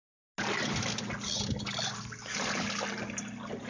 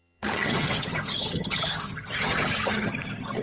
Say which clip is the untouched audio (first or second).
first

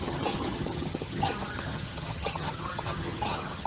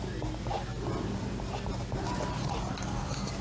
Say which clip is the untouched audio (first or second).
second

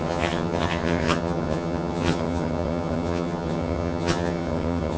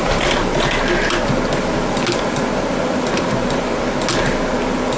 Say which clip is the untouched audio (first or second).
second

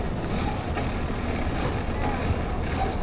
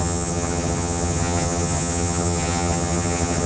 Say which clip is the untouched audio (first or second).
first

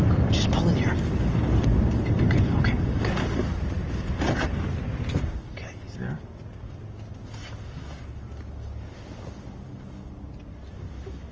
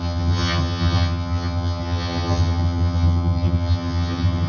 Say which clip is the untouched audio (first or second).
first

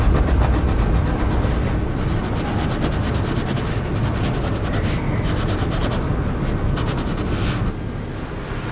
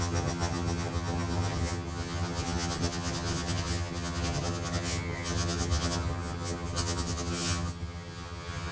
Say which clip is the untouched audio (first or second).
first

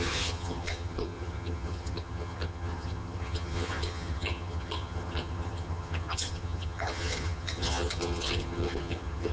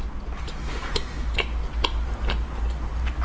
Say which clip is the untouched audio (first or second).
second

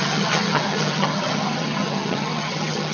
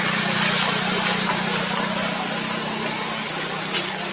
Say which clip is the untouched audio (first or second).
second